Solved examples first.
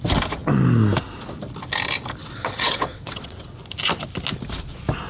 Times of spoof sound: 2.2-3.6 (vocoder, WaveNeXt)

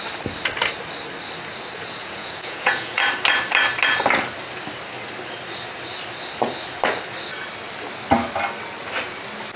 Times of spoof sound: 2.0-3.0 (vocoder, Vocos)

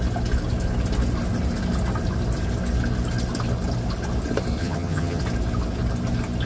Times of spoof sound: 4.6-5.2 (vocoder, HiFi-GAN)